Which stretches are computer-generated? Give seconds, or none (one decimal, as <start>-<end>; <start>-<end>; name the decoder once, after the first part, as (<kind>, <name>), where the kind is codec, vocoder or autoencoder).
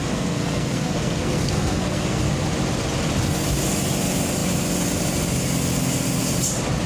0.0-2.3 (codec, SNAC)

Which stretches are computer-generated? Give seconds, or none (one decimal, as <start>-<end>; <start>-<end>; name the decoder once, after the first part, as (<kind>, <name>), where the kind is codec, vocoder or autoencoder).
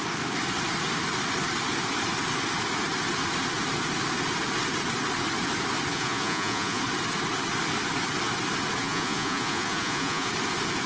5.9-6.8 (vocoder, Vocos); 8.8-10.3